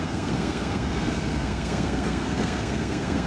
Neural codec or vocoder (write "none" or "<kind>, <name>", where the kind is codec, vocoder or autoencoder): codec, SNAC